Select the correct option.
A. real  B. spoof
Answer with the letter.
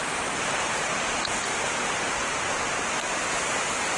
A